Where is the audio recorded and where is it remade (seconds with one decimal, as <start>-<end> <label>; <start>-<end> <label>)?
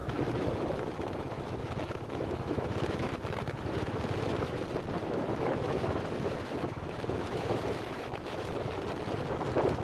0.0-4.6 remade; 4.6-5.0 recorded; 5.0-8.8 remade; 8.8-9.8 recorded